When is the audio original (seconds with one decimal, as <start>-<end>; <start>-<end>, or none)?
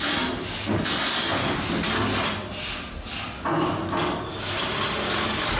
0.0-5.6